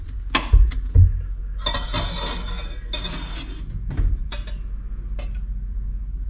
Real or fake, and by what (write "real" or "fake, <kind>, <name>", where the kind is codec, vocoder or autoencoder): real